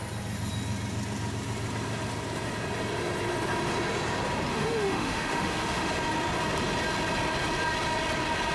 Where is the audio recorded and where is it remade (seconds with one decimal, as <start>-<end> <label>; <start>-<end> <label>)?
0.0-4.5 recorded; 4.5-5.9 remade; 5.9-8.5 recorded